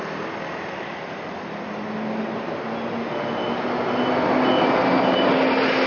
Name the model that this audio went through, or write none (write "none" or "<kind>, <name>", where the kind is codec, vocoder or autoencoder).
none